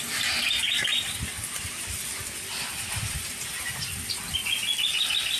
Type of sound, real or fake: real